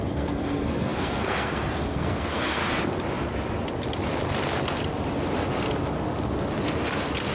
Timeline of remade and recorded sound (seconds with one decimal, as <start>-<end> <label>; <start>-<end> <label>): 0.0-2.6 remade; 2.6-7.3 recorded